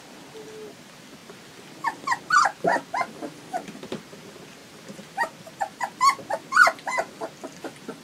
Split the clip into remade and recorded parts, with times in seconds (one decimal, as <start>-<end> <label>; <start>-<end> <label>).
0.0-8.0 recorded